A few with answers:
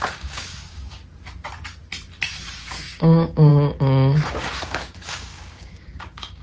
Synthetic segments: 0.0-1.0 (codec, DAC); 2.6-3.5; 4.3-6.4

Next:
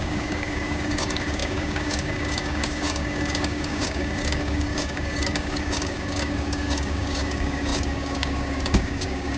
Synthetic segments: 0.0-9.4 (codec, DAC)

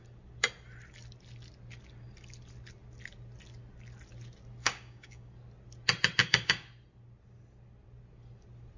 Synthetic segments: 4.6-5.3 (codec, DAC); 6.2-6.7

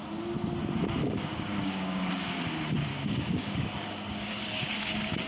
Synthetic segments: 1.0-2.1 (codec, DAC); 2.9-5.3

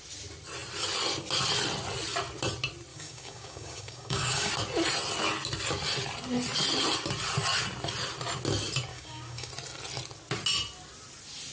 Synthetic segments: 2.9-4.5 (codec, DAC); 8.9-9.5

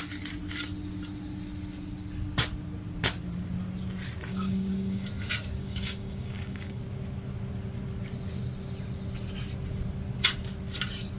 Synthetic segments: 4.3-5.1 (codec, DAC); 5.6-6.8